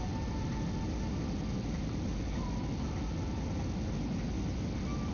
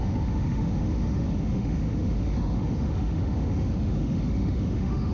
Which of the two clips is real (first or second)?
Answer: first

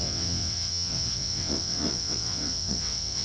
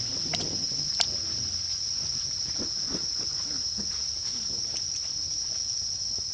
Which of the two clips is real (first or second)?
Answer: second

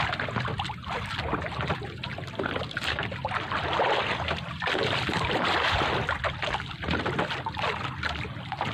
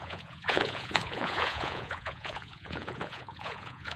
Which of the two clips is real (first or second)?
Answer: first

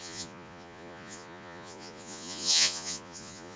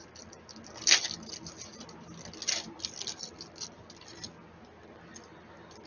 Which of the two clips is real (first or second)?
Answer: second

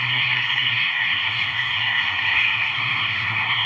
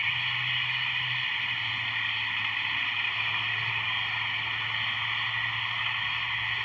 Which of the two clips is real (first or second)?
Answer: second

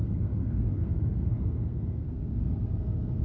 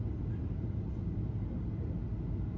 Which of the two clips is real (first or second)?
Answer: second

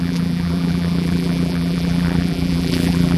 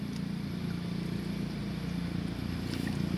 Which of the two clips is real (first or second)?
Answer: second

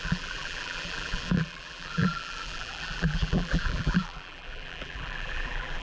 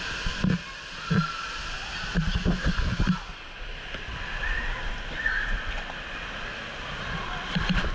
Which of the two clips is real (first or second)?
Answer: second